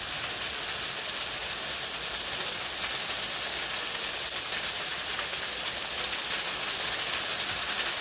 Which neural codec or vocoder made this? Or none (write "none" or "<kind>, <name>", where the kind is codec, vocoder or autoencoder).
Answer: none